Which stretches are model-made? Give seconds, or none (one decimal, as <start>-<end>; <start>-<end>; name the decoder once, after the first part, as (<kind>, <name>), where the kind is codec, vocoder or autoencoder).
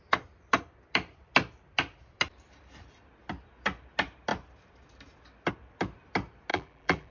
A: 6.5-7.1 (vocoder, BigVGAN v2)